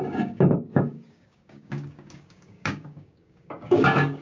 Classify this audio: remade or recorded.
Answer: remade